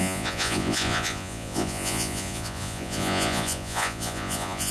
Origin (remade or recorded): remade